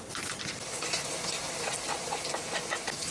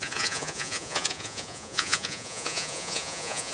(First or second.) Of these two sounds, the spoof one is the second